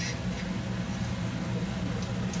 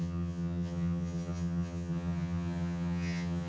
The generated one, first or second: second